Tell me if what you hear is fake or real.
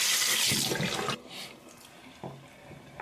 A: real